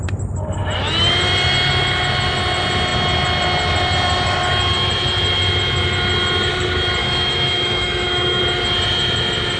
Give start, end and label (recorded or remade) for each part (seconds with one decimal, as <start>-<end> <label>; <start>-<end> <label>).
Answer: 0.0-7.0 recorded; 7.0-8.4 remade; 8.4-9.6 recorded